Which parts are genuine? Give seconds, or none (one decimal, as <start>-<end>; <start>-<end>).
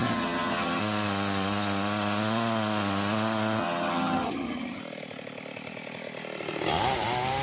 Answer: 0.8-3.6; 4.8-7.4